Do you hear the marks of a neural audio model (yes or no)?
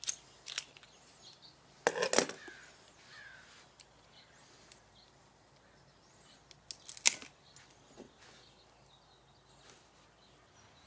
no